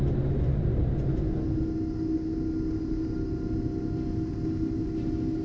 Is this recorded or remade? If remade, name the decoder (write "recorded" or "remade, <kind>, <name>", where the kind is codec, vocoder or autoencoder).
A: recorded